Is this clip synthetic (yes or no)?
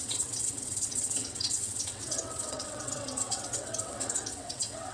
yes